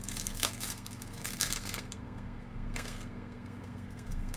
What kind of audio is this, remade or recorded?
remade